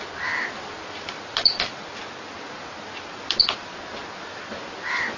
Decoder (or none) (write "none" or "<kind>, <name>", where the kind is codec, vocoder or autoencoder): none